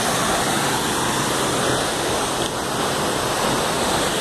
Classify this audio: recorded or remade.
recorded